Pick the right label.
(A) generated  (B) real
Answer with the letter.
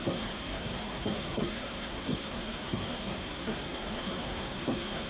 A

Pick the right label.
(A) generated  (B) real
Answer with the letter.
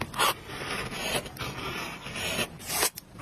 B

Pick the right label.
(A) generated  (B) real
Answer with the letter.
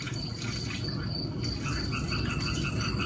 B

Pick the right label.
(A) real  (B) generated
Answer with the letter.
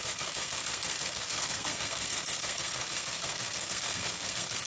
B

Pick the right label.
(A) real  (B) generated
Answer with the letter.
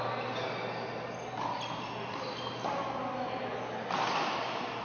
A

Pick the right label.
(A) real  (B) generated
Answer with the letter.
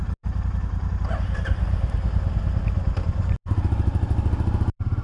A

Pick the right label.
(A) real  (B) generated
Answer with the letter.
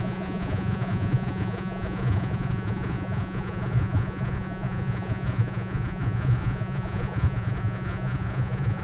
B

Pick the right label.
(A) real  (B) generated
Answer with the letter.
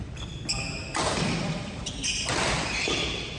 A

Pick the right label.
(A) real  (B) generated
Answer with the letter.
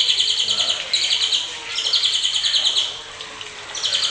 A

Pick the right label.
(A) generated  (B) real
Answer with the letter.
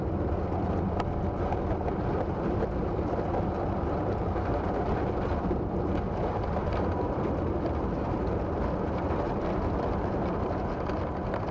B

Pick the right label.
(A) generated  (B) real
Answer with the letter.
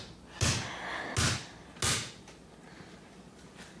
B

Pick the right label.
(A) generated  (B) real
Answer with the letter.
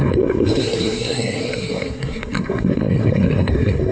A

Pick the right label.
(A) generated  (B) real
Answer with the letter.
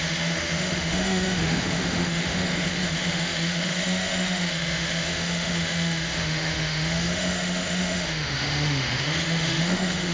A